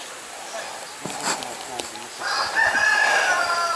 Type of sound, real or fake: real